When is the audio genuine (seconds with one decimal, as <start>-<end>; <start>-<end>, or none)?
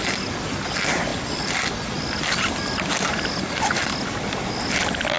0.0-5.2